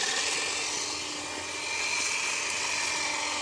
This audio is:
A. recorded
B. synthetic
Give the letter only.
A